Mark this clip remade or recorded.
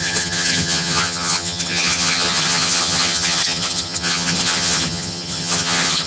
remade